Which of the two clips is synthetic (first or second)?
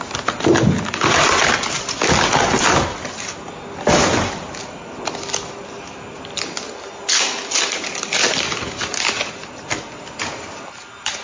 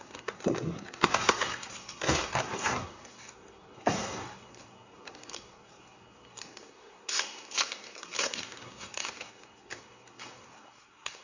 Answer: second